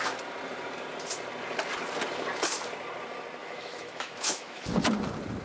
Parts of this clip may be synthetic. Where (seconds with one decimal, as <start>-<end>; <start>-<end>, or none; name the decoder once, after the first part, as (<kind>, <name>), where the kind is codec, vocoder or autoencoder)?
3.4-4.6 (autoencoder, DAC-VAE)